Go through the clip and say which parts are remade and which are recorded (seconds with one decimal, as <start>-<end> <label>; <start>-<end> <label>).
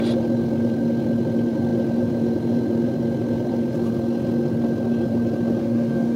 0.0-5.6 recorded; 5.6-6.2 remade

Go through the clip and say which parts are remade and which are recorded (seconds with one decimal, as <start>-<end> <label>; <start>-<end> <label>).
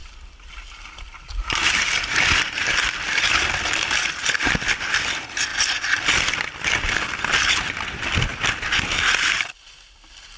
0.0-1.7 recorded; 1.7-5.5 remade; 5.5-7.5 recorded; 7.5-8.3 remade; 8.3-9.5 recorded; 9.5-10.4 remade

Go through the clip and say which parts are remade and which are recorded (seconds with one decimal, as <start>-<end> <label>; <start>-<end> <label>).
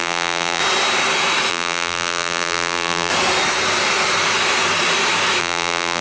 0.0-0.6 remade; 0.6-1.5 recorded; 1.5-3.1 remade; 3.1-5.4 recorded; 5.4-6.0 remade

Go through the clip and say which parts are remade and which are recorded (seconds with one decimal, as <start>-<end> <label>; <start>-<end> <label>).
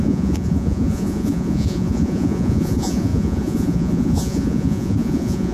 0.0-5.5 remade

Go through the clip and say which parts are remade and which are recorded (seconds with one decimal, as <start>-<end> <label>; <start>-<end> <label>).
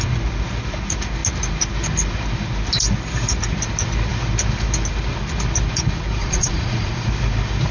0.0-6.2 recorded; 6.2-7.1 remade; 7.1-7.7 recorded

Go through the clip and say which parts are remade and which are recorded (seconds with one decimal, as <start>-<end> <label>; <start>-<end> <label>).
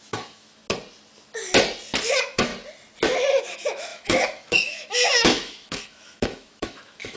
0.0-0.6 remade; 0.6-2.1 recorded; 2.1-2.5 remade; 2.5-3.4 recorded; 3.4-7.2 remade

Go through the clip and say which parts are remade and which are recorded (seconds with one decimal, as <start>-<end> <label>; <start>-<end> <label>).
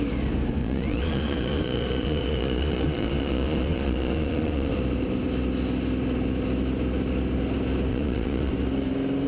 0.0-0.6 recorded; 0.6-4.7 remade; 4.7-7.9 recorded; 7.9-8.5 remade; 8.5-9.3 recorded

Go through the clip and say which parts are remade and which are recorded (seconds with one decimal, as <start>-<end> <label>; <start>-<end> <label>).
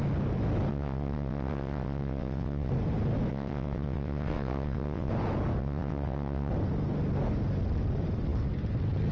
0.0-0.7 recorded; 0.7-2.7 remade; 2.7-3.3 recorded; 3.3-5.1 remade; 5.1-5.6 recorded; 5.6-6.5 remade; 6.5-9.1 recorded